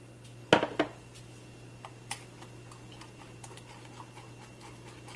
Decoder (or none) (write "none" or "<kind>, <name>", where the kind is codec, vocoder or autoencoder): none